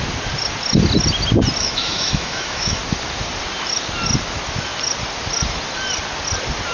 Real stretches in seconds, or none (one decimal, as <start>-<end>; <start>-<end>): 0.0-1.6; 2.8-6.7